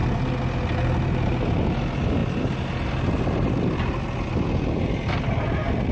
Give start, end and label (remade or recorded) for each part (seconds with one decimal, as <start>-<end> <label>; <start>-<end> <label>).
0.0-5.9 recorded